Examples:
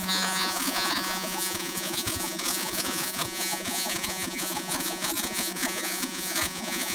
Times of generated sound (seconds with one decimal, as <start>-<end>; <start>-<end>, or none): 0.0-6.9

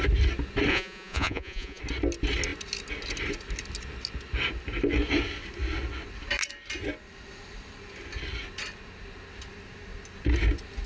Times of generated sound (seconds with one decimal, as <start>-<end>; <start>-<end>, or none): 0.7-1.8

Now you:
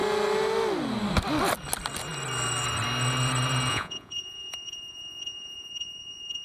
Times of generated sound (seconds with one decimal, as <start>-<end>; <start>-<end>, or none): 3.7-6.4